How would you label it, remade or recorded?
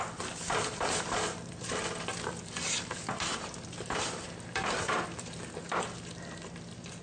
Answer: recorded